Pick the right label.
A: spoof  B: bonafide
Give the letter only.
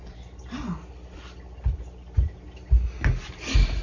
B